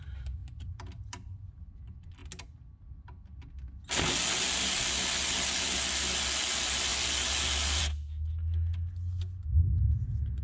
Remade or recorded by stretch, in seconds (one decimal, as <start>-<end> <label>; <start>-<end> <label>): 0.0-0.4 recorded; 0.4-1.8 remade; 1.8-10.4 recorded